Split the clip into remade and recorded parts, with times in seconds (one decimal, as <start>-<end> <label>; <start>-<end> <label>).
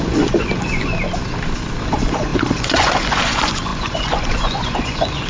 0.0-0.9 remade; 0.9-1.8 recorded; 1.8-5.3 remade